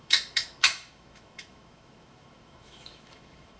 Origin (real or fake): fake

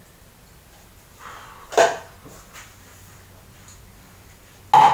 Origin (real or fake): real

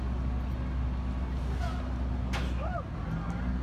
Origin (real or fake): real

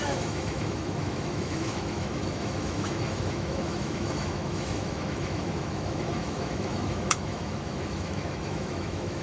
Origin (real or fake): fake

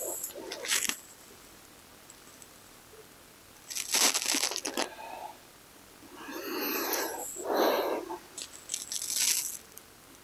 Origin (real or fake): real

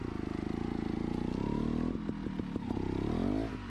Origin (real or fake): real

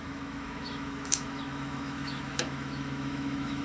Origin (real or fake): fake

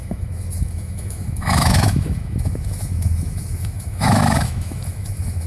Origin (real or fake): fake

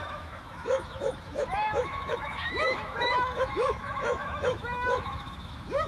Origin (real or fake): fake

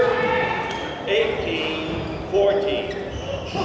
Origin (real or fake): real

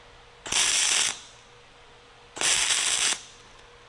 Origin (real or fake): real